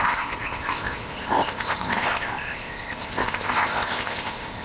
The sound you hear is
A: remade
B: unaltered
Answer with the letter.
A